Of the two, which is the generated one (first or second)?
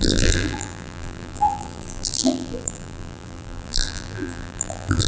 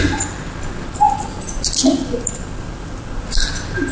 first